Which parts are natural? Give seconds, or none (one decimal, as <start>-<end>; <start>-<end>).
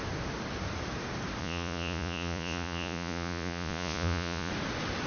0.0-1.4; 4.5-5.1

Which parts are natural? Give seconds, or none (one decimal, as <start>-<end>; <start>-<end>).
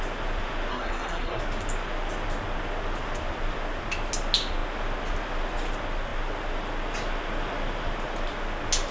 0.0-0.7; 1.4-8.9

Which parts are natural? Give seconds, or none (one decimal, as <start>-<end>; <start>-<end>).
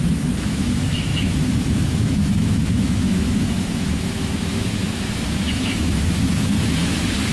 none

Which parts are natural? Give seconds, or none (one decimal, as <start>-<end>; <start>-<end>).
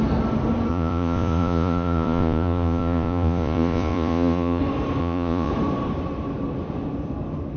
0.0-0.7; 4.6-5.0; 5.5-7.6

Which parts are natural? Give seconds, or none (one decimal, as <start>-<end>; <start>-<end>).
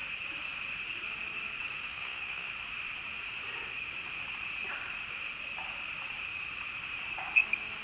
0.0-1.9; 2.5-7.8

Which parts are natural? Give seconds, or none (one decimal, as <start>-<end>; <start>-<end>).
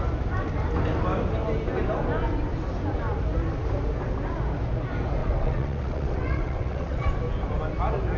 0.0-5.2; 7.1-8.2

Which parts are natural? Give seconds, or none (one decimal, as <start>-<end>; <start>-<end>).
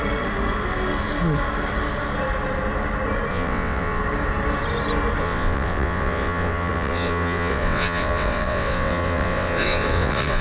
0.0-3.3; 4.0-5.2